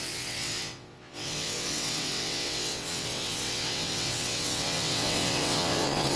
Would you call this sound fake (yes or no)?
yes